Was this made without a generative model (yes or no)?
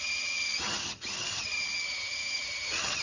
no